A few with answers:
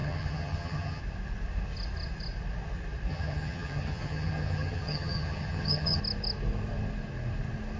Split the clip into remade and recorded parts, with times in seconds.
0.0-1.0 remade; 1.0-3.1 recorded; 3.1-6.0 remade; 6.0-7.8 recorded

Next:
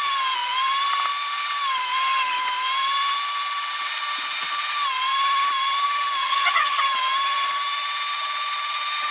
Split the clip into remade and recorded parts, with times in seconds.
0.0-6.2 recorded; 6.2-6.8 remade; 6.8-9.1 recorded

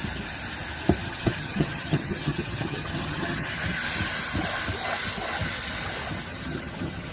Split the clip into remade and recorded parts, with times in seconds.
0.0-1.0 recorded; 1.0-3.5 remade; 3.5-6.3 recorded; 6.3-7.1 remade